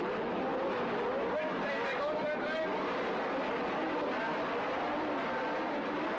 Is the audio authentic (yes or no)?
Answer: yes